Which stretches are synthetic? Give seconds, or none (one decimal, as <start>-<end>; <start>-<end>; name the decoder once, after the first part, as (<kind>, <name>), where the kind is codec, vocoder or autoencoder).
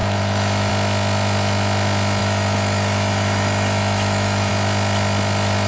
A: 0.0-0.7 (autoencoder, DAC-VAE); 2.2-4.5